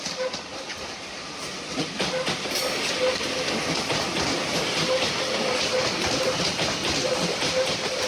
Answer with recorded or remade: recorded